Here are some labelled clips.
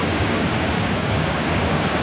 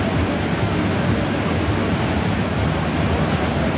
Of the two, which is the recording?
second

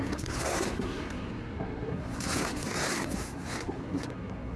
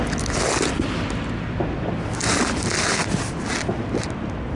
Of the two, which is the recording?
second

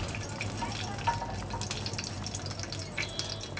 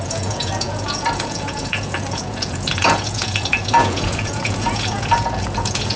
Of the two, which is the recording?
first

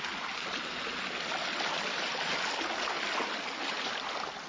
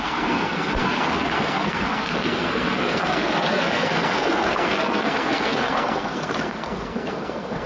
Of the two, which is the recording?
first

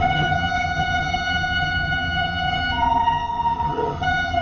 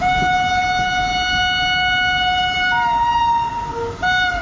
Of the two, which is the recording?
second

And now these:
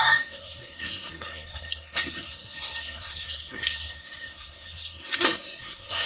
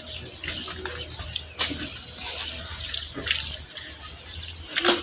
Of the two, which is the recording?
second